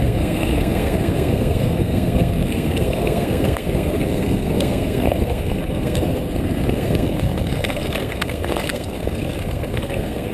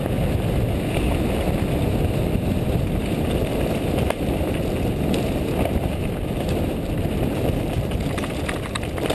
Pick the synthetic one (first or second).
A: first